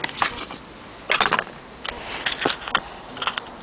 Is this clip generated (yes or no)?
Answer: no